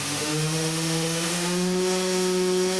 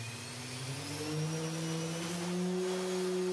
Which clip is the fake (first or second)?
first